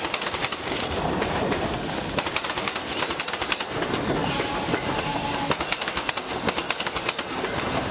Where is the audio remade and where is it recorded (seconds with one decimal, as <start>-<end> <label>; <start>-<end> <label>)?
0.0-0.4 recorded; 0.4-3.2 remade; 3.2-7.9 recorded